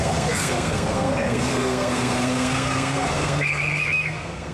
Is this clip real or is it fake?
fake